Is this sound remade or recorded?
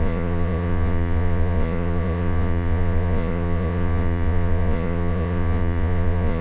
remade